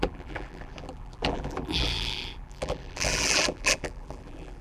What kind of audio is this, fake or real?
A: fake